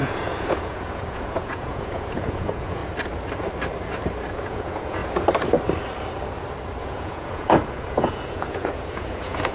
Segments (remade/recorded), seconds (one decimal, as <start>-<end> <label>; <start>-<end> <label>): 0.0-2.8 remade; 2.8-4.3 recorded; 4.3-5.0 remade; 5.0-6.8 recorded; 6.8-9.5 remade